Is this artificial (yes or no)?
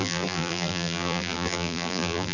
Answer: yes